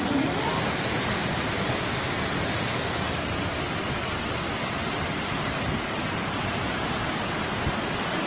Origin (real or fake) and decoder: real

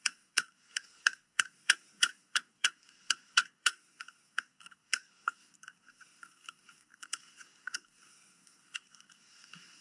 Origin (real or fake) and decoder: fake, codec, SNAC